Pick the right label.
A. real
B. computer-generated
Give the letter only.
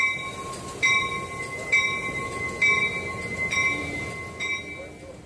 A